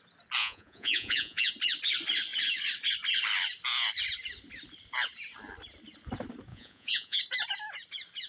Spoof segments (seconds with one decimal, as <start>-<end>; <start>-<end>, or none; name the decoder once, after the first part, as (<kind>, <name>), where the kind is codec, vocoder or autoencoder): 0.4-1.5 (vocoder, Vocos); 6.5-7.2